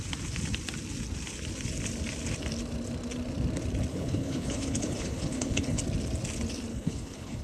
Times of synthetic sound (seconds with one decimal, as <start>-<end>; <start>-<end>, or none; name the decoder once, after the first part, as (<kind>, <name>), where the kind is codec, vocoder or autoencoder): 3.9-5.8 (codec, HILCodec); 6.7-7.4